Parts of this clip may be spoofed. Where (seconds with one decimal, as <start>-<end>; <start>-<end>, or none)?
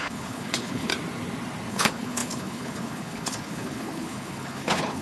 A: 0.0-0.9; 1.7-5.0